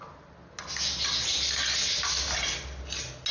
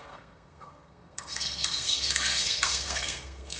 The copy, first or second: second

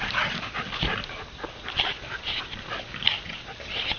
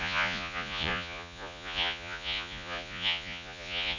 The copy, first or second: second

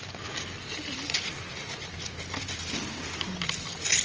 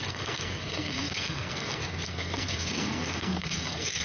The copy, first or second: second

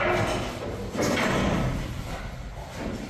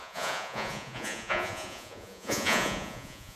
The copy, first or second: second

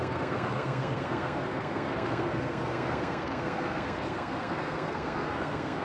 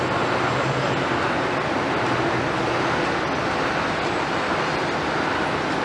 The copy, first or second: first